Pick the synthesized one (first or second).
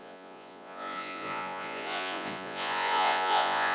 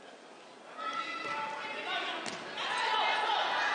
first